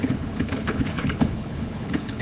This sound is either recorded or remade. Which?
remade